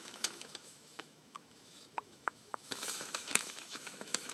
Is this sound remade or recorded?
remade